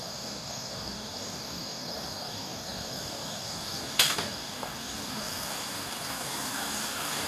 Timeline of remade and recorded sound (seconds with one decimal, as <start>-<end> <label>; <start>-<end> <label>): 0.0-7.3 remade